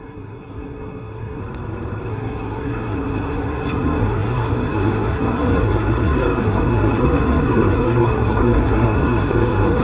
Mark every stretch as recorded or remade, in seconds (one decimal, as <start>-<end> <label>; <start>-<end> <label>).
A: 0.0-1.4 remade; 1.4-2.1 recorded; 2.1-9.8 remade